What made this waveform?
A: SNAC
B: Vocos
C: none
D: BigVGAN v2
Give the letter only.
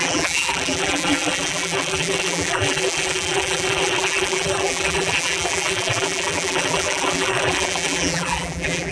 D